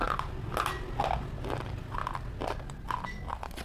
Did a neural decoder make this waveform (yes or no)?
no